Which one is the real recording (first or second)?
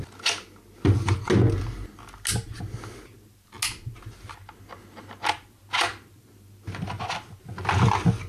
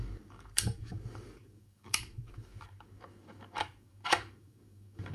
first